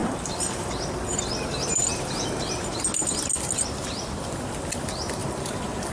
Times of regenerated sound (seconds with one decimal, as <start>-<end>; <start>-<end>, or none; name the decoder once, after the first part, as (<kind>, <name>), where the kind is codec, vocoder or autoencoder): 0.0-1.3 (vocoder, BigVGAN v2); 5.2-5.9